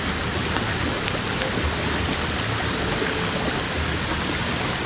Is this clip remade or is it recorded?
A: recorded